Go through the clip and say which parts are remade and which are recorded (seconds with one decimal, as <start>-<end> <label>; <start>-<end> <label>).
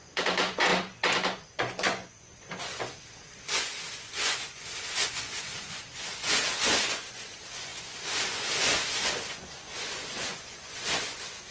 0.0-11.5 remade